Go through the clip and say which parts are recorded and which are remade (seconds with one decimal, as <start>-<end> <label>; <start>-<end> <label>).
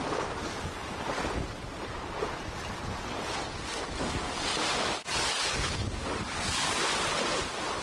0.0-5.0 recorded; 5.0-6.7 remade; 6.7-7.8 recorded